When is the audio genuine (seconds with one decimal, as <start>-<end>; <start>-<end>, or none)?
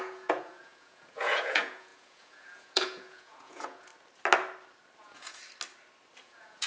3.9-5.0; 5.4-6.2